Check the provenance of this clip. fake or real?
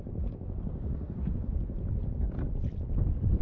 real